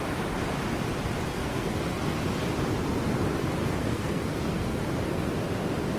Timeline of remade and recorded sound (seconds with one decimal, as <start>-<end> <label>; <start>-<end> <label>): 0.0-1.3 recorded; 1.3-2.2 remade; 2.2-3.6 recorded; 3.6-5.3 remade; 5.3-6.0 recorded